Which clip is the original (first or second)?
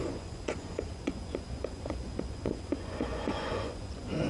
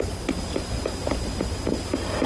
second